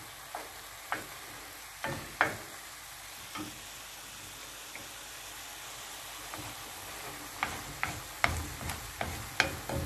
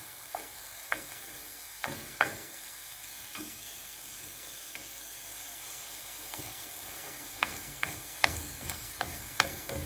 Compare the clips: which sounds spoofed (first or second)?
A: second